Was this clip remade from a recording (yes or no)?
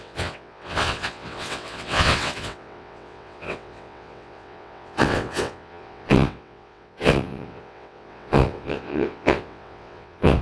yes